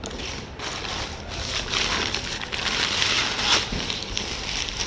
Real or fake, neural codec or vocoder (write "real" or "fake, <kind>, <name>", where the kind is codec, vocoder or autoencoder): real